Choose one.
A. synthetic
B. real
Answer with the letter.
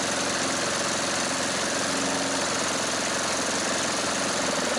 B